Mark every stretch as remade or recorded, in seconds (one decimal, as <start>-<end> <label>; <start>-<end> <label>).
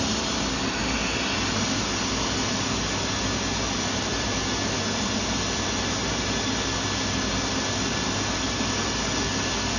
0.0-4.1 recorded; 4.1-4.8 remade; 4.8-9.8 recorded